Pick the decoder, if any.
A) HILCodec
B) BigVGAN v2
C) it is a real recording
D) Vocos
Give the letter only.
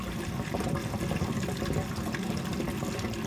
C